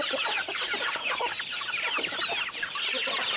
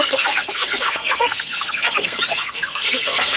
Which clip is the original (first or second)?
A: first